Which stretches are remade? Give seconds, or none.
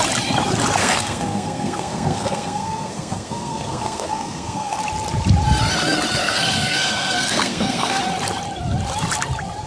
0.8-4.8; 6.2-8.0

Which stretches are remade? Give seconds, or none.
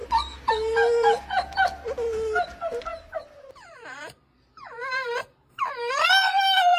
2.9-5.9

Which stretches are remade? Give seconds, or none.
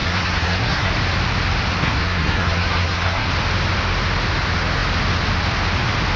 0.0-0.9; 1.8-3.3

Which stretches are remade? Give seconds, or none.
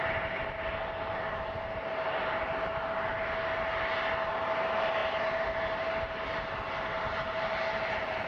none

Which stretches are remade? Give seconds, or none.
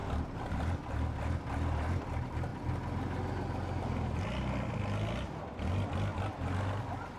none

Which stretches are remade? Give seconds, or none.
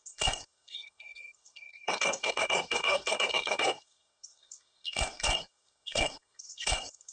0.0-7.1